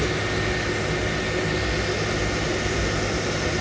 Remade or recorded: recorded